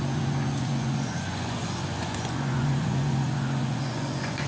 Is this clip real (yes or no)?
no